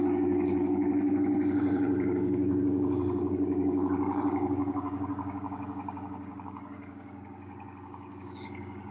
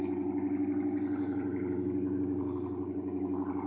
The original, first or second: second